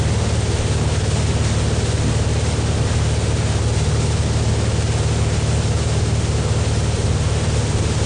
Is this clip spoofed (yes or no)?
no